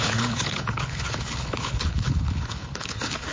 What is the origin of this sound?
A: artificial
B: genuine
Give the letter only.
A